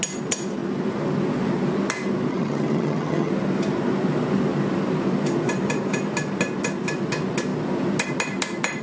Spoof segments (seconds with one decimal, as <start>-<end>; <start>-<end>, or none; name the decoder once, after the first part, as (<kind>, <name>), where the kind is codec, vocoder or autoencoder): 2.3-3.3 (vocoder, HiFi-GAN)